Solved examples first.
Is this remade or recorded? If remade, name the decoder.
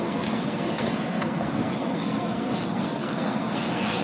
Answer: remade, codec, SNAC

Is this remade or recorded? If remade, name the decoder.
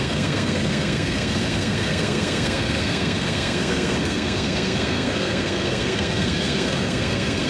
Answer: remade, codec, SNAC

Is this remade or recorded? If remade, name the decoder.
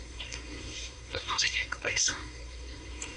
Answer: remade, codec, SNAC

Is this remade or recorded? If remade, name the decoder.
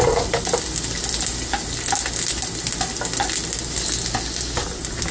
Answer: recorded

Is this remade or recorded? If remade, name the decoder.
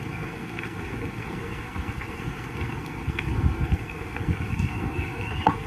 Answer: remade, codec, SNAC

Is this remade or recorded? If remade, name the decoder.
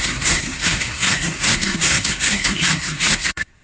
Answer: remade, codec, SNAC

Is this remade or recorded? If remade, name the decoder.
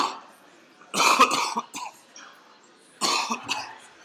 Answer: recorded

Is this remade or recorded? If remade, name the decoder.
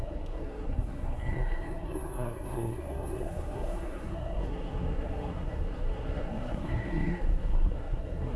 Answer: remade, codec, SNAC